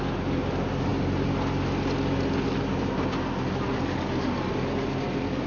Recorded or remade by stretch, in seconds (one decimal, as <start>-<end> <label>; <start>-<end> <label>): 0.0-5.5 recorded